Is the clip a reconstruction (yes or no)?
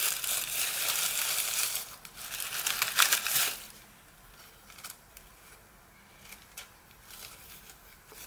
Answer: no